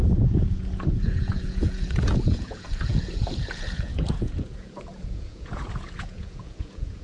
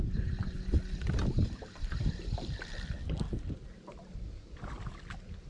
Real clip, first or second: second